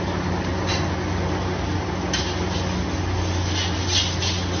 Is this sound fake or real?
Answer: real